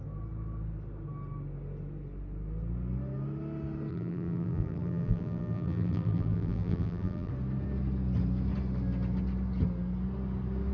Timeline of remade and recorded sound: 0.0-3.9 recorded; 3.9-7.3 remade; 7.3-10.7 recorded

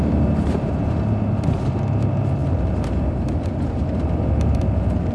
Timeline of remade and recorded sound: 0.0-5.1 remade